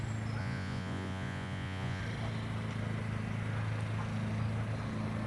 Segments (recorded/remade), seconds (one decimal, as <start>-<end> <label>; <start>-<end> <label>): 0.0-0.4 recorded; 0.4-2.0 remade; 2.0-5.3 recorded